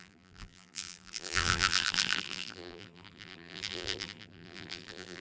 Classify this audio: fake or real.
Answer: fake